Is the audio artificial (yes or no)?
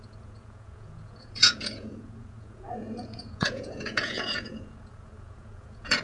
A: yes